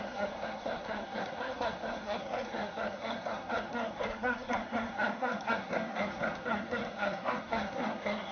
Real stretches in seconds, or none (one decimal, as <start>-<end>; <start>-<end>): none